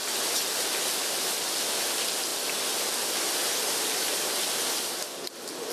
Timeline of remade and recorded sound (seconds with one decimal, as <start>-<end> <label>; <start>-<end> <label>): 0.0-5.7 recorded